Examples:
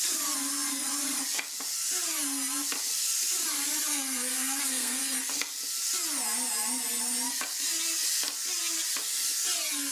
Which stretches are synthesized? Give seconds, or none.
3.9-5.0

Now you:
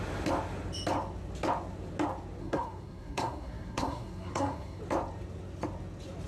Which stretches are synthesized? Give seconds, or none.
2.4-4.8

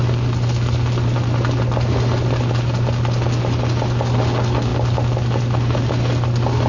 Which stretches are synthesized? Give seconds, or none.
none

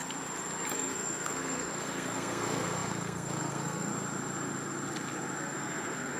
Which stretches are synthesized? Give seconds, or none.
0.7-3.9; 5.4-6.2

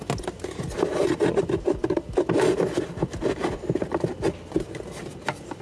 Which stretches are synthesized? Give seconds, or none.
none

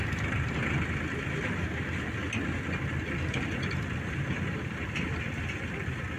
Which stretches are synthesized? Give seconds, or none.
none

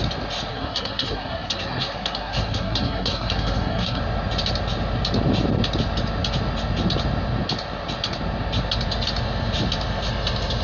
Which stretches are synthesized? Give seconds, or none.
0.5-4.0